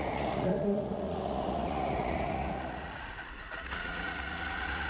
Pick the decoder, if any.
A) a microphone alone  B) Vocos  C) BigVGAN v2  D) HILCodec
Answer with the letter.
B